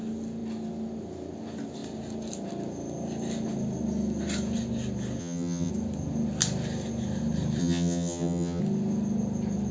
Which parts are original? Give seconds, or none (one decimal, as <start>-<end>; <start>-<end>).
0.0-5.2; 5.7-7.6; 8.6-9.7

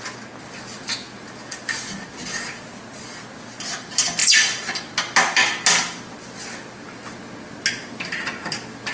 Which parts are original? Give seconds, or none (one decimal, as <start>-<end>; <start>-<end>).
0.0-8.9

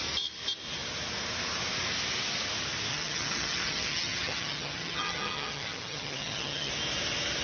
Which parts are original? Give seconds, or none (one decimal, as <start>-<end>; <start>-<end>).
0.0-2.9; 6.7-7.4

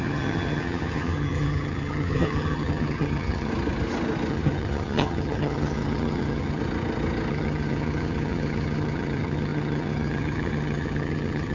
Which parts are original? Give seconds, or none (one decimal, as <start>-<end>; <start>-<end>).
3.5-4.3; 6.6-7.3

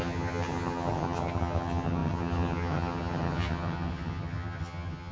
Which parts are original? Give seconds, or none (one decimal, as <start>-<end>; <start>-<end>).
none